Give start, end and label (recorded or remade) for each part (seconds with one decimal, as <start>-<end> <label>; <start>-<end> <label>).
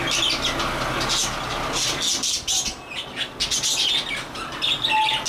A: 0.0-5.3 recorded